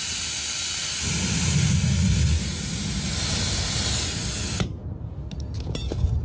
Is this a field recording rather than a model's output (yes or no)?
yes